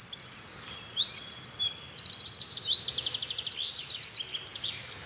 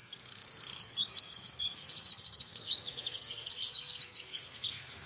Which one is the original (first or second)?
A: first